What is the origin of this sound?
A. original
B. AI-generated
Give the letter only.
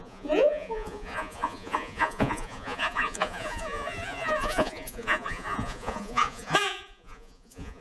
B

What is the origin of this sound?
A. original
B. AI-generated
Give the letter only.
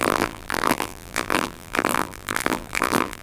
B